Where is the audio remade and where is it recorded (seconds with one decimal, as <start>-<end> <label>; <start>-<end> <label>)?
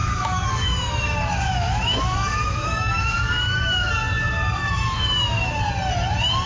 0.0-3.9 remade; 3.9-4.6 recorded; 4.6-5.6 remade; 5.6-6.5 recorded